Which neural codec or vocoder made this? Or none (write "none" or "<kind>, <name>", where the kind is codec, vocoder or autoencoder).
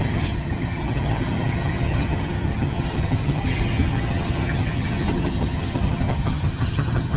vocoder, HiFi-GAN